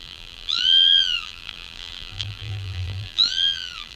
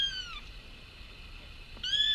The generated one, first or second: first